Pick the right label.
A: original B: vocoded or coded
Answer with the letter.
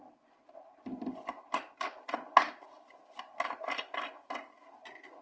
A